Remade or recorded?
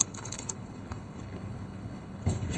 remade